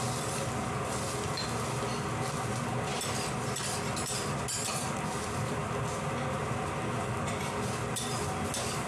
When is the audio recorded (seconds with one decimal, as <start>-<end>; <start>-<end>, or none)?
0.0-8.9